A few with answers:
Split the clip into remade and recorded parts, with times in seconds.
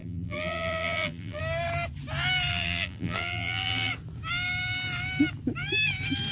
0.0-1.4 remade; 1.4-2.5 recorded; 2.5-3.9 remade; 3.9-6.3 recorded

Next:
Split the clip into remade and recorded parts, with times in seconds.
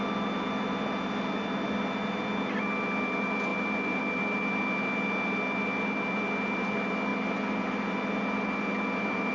0.0-9.3 recorded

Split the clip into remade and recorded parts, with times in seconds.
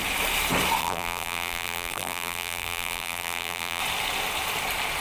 0.0-0.8 recorded; 0.8-3.8 remade; 3.8-5.0 recorded